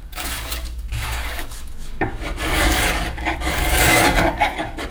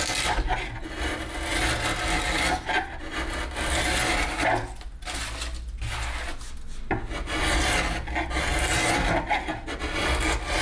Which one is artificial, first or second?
first